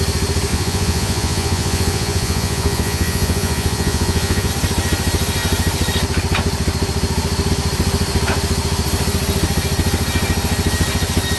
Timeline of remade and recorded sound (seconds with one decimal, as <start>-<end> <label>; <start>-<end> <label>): 0.0-0.5 recorded; 0.5-4.5 remade; 4.5-11.4 recorded